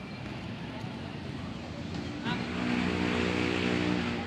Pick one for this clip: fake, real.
real